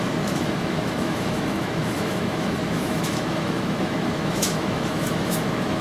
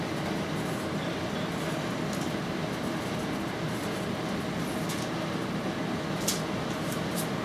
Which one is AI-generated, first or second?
first